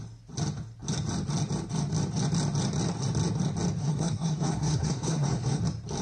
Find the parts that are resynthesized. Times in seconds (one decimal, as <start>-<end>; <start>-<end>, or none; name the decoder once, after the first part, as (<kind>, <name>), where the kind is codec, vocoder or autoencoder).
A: 3.8-5.6 (codec, SNAC)